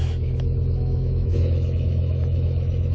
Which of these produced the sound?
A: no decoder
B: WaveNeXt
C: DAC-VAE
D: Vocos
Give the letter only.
C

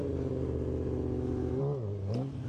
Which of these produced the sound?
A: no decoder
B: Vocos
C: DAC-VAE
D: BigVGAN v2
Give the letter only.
A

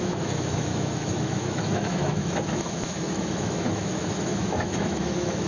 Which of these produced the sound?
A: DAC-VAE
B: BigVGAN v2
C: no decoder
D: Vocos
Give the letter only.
A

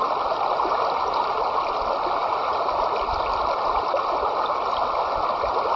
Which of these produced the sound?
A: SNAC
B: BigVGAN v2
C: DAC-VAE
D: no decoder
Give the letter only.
D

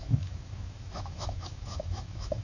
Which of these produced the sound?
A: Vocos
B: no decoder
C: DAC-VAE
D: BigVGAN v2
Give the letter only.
C